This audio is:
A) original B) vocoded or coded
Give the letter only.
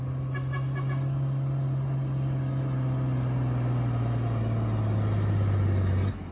A